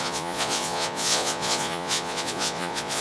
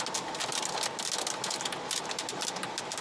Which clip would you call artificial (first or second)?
first